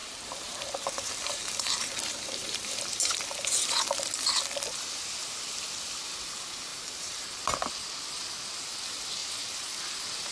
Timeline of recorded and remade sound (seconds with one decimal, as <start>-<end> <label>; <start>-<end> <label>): 0.0-3.1 remade; 3.1-6.7 recorded; 6.7-7.4 remade; 7.4-9.2 recorded; 9.2-9.9 remade; 9.9-10.3 recorded